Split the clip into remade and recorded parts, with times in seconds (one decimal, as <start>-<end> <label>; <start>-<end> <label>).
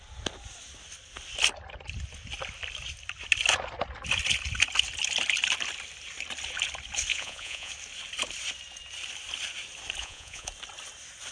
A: 0.0-7.1 recorded; 7.1-7.7 remade; 7.7-10.0 recorded; 10.0-10.5 remade; 10.5-11.3 recorded